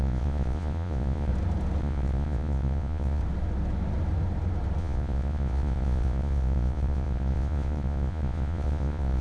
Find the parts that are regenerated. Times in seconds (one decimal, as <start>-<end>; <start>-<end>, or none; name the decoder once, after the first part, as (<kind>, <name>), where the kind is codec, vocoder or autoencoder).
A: 0.0-1.3 (vocoder, Vocos); 1.8-3.2; 4.8-9.2